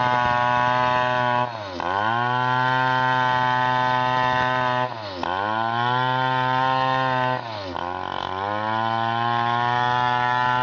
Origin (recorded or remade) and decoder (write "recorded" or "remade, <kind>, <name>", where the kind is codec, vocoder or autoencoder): recorded